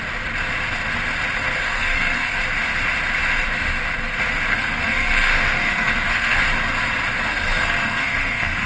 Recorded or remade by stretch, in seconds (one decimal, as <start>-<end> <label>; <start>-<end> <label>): 0.0-1.6 recorded; 1.6-2.4 remade; 2.4-4.5 recorded; 4.5-6.4 remade; 6.4-7.3 recorded; 7.3-8.7 remade